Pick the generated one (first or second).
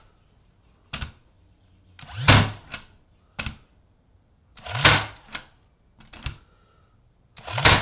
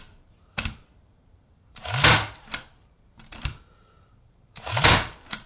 second